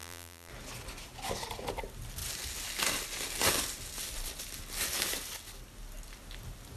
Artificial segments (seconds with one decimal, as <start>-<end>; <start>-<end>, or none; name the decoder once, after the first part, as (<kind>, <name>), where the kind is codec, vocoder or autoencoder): 0.0-0.5 (vocoder, BigVGAN v2)